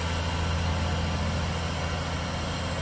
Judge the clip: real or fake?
real